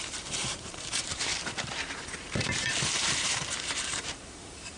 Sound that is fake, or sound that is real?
fake